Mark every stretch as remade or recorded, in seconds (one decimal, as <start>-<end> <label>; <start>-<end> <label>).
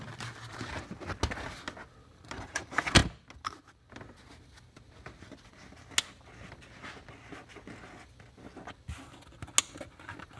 0.0-10.4 recorded